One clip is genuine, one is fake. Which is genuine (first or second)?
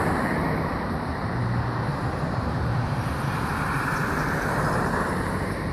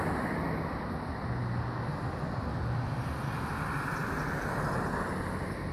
second